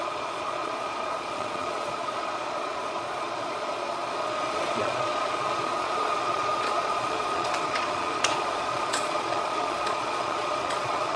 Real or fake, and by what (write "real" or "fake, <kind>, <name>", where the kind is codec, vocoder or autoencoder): fake, vocoder, Vocos